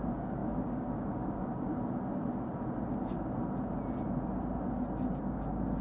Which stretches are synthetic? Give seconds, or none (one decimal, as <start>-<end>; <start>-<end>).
0.0-1.7; 5.2-5.8